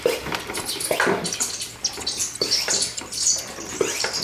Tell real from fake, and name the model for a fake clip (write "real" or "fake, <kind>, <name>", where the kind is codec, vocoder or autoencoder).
real